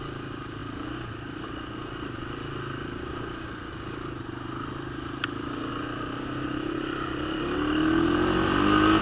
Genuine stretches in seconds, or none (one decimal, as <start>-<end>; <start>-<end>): 0.0-9.0